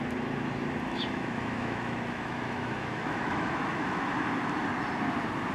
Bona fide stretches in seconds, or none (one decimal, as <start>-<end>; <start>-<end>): 0.0-0.9; 4.1-5.5